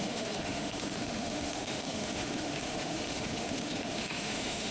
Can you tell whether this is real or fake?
fake